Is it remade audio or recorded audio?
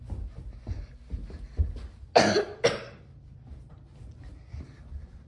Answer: recorded